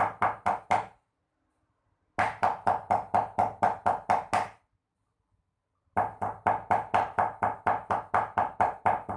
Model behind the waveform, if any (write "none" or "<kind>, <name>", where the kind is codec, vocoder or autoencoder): none